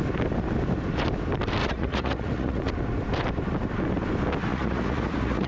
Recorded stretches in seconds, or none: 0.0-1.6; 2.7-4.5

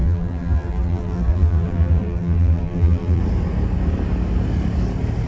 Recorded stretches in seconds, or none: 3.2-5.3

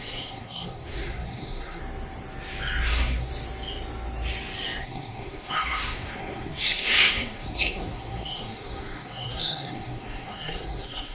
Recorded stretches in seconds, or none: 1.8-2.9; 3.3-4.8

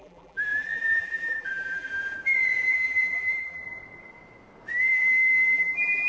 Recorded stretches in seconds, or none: 1.9-2.7; 3.6-4.9

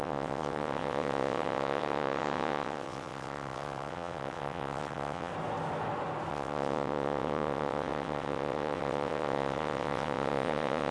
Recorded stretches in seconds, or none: 5.3-6.3

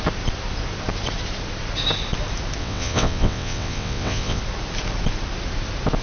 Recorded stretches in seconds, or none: 0.0-2.6; 4.4-6.0